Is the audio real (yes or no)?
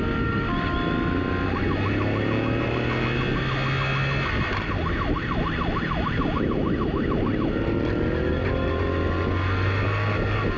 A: yes